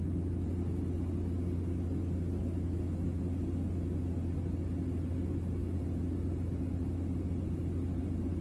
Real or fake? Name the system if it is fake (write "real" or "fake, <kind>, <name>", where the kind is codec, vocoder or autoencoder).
real